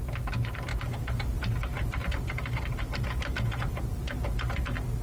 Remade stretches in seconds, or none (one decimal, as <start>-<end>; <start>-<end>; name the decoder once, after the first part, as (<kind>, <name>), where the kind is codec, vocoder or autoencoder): 2.0-3.7 (vocoder, BigVGAN v2)